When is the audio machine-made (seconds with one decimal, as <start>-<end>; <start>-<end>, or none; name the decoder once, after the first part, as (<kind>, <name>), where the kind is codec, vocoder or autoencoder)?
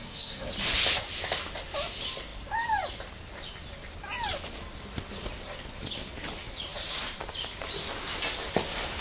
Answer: 0.0-0.5 (codec, SNAC)